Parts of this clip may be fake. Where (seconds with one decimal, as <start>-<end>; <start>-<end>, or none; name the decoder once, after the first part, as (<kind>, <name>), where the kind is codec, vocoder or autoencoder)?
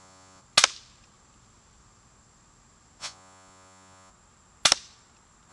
0.0-0.4 (vocoder, Vocos); 3.0-4.1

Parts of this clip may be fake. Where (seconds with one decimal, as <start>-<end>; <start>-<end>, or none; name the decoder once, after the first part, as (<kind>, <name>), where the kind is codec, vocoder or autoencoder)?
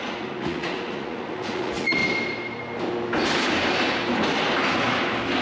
0.0-2.0 (vocoder, Vocos)